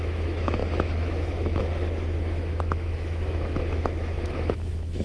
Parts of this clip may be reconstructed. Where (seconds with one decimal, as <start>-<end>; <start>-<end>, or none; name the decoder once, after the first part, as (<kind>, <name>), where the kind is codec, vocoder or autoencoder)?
0.0-5.0 (autoencoder, DAC-VAE)